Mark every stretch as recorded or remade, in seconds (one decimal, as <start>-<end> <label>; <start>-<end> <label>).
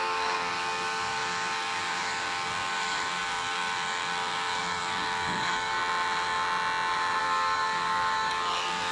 0.0-5.8 remade; 5.8-7.2 recorded; 7.2-8.9 remade